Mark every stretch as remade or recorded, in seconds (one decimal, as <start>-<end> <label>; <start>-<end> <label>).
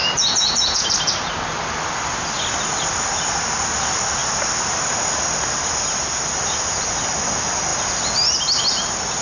0.0-0.9 remade; 0.9-9.2 recorded